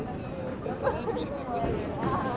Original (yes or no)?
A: yes